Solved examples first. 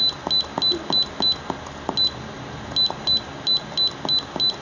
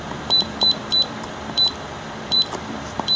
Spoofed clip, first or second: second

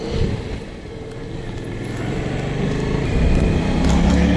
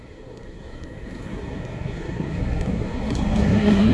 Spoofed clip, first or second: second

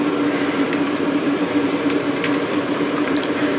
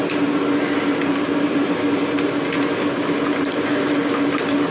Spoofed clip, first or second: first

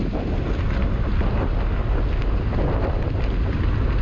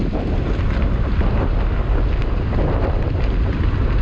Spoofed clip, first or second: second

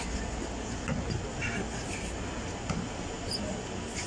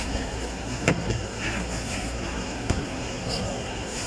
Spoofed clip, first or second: second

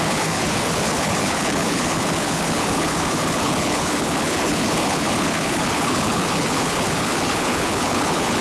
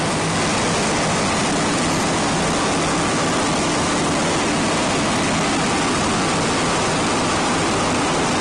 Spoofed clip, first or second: first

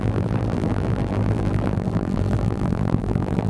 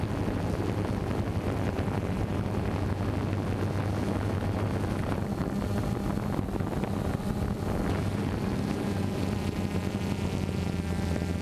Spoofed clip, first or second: first